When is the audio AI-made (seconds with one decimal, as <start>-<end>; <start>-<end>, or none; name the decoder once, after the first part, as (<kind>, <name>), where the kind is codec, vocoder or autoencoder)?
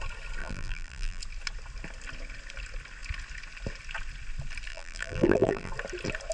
0.4-1.2 (vocoder, BigVGAN v2); 4.7-5.7